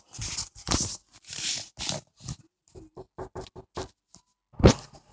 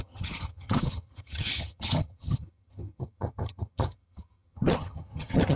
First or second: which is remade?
second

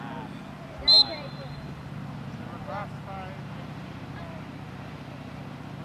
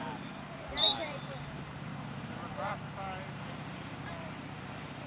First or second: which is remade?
second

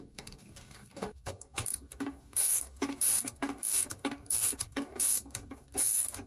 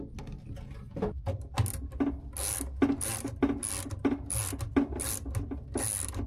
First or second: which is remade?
first